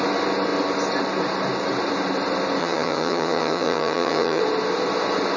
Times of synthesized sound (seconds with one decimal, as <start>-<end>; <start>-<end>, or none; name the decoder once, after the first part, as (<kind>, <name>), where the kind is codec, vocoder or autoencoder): 2.6-4.4 (vocoder, HiFi-GAN)